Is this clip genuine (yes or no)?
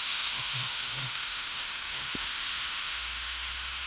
no